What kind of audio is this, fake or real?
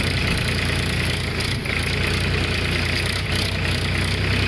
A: real